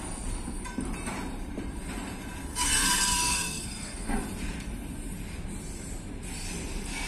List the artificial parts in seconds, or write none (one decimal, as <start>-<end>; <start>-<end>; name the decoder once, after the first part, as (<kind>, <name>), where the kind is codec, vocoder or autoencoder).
2.5-4.2 (codec, SNAC)